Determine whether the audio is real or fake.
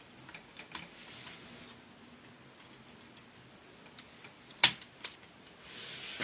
real